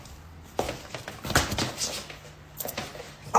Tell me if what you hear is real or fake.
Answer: real